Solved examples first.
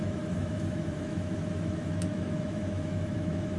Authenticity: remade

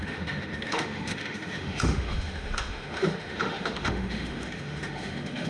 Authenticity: remade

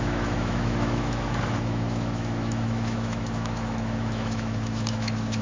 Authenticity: remade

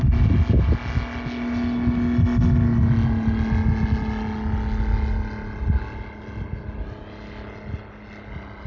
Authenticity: recorded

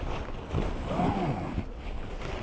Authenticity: recorded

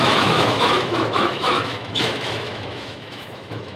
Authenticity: remade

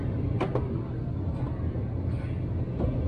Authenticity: recorded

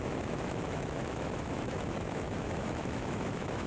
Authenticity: remade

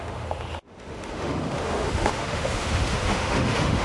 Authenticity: remade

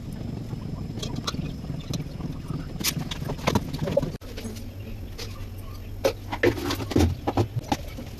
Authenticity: recorded